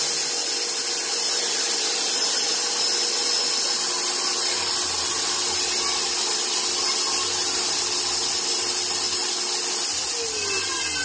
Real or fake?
real